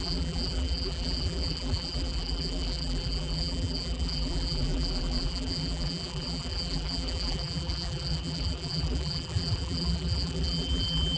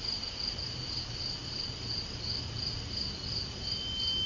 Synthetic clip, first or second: first